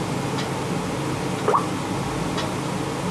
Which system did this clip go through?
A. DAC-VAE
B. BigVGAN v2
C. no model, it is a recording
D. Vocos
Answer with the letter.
C